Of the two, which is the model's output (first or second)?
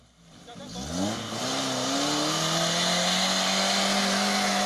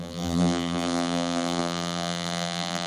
second